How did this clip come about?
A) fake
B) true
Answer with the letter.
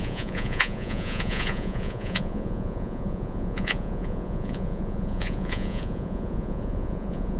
A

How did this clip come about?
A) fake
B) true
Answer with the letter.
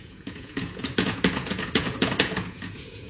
A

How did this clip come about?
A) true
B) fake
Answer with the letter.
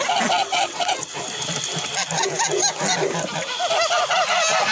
A